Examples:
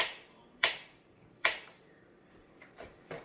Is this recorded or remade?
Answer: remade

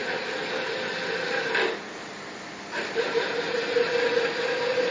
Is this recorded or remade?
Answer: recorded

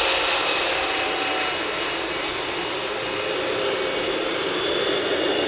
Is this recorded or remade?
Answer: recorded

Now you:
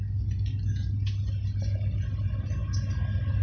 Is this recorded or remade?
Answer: recorded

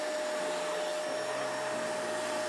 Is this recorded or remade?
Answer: recorded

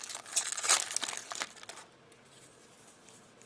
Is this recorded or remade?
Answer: recorded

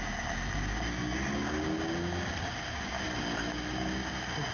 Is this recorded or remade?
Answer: recorded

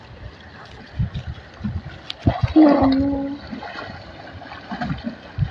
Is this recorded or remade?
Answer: recorded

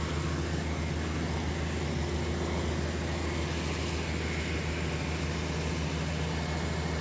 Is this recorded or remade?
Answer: recorded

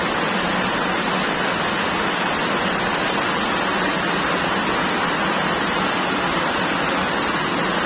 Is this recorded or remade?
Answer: recorded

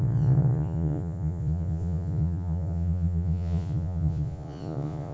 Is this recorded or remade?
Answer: remade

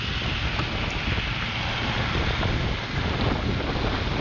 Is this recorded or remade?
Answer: recorded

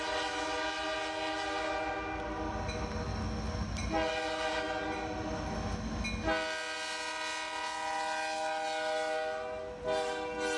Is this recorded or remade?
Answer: recorded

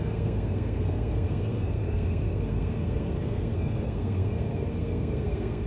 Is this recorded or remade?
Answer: remade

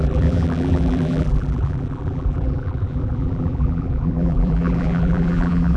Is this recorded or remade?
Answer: remade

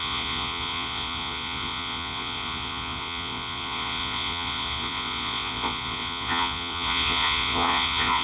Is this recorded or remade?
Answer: remade